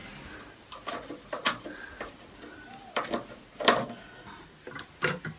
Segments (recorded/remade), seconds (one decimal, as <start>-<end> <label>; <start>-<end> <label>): 0.0-3.8 recorded; 3.8-4.4 remade; 4.4-5.4 recorded